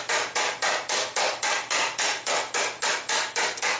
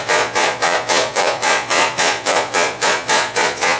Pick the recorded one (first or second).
first